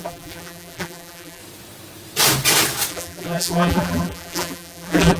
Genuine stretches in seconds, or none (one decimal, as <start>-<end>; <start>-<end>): 1.4-2.9